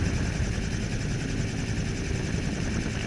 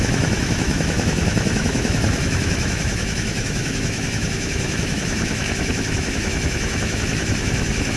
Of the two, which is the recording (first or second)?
first